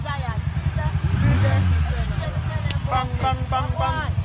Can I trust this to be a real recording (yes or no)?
yes